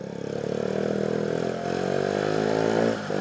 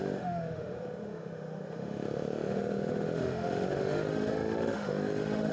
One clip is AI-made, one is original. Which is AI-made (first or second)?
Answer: second